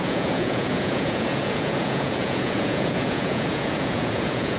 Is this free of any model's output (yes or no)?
no